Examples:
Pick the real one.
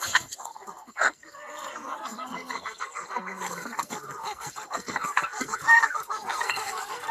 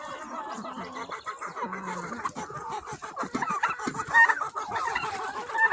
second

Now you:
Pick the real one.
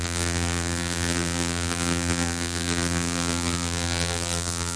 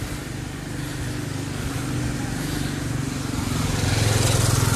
second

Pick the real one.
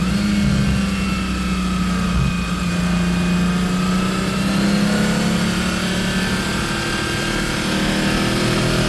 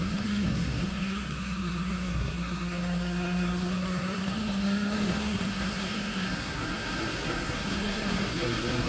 first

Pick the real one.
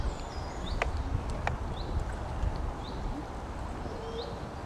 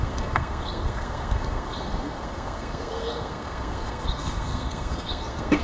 first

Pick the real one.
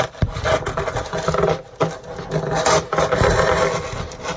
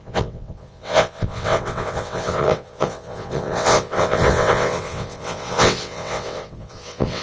first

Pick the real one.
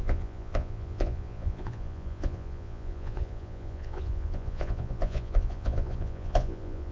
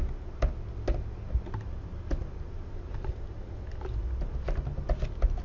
second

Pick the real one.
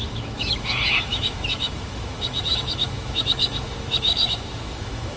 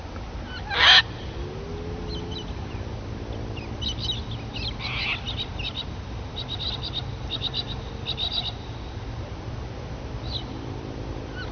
second